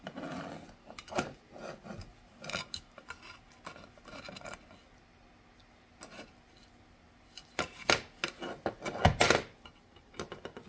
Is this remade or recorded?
recorded